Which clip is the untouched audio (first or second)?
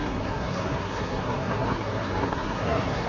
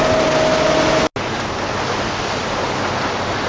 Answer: second